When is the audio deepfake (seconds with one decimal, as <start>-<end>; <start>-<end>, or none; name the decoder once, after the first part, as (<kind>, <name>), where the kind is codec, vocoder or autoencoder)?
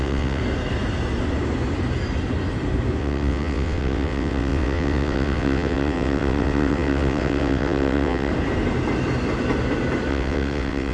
0.0-0.4 (vocoder, WaveNeXt); 3.0-8.3; 10.1-10.9